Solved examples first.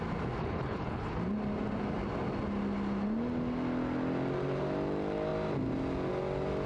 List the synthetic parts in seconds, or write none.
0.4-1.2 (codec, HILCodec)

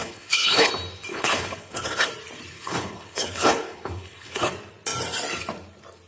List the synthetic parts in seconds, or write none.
0.0-0.7 (codec, HILCodec); 1.1-2.1; 2.5-4.5

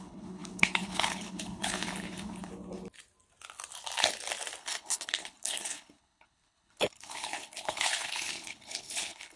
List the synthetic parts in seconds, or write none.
0.0-2.5 (codec, HILCodec); 4.6-9.4

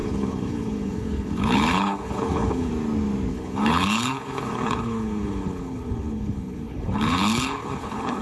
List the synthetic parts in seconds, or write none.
0.0-2.7 (codec, HILCodec); 3.3-8.2

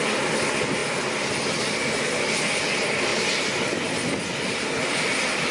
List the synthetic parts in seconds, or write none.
none

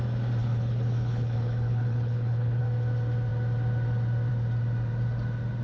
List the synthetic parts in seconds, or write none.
0.4-2.6 (codec, HILCodec)

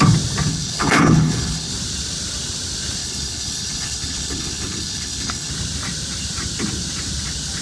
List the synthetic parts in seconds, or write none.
0.5-1.7 (codec, HILCodec); 3.0-5.5

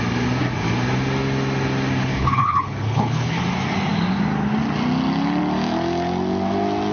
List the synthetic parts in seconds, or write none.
2.0-3.4 (codec, HILCodec)